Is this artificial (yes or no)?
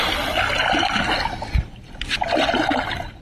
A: no